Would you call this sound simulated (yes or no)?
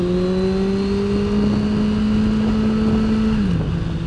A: no